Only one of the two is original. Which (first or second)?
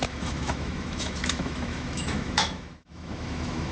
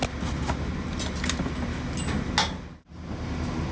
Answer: second